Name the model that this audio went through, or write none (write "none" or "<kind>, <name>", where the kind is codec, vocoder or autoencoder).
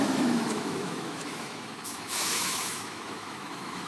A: autoencoder, DAC-VAE